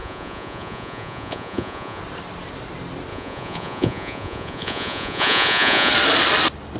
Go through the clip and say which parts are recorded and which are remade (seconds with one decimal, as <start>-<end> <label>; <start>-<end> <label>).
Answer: 0.0-2.0 remade; 2.0-3.1 recorded; 3.1-5.9 remade; 5.9-6.8 recorded